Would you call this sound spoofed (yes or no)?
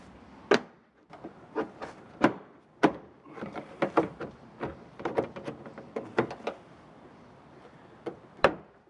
no